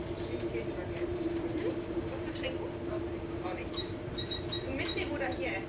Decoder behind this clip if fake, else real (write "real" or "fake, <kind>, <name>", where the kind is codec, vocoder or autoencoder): fake, vocoder, BigVGAN v2